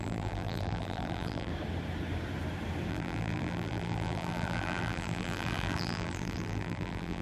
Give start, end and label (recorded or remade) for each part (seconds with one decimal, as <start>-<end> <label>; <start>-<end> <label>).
0.0-1.5 remade; 1.5-2.9 recorded; 2.9-7.2 remade